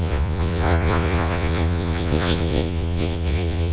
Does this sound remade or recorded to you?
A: remade